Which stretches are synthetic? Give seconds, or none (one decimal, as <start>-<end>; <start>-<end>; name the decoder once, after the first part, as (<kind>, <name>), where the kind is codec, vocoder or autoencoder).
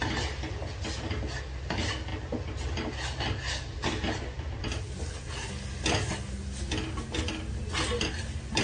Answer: none